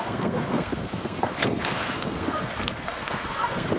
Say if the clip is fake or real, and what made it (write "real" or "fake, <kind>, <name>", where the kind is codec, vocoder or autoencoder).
fake, codec, SNAC